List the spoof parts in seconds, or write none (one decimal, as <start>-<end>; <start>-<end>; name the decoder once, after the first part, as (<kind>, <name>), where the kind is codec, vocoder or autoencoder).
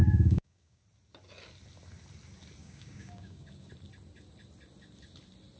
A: 0.0-0.8 (codec, DAC); 2.6-3.7